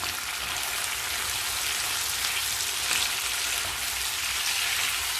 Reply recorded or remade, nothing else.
recorded